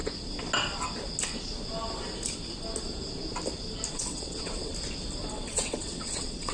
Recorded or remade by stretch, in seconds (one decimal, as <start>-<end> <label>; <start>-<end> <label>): 0.0-3.9 recorded; 3.9-4.7 remade; 4.7-5.3 recorded; 5.3-6.5 remade